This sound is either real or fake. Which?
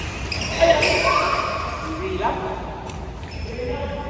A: real